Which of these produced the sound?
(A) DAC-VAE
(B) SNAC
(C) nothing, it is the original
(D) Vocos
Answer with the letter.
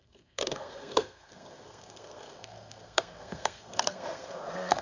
B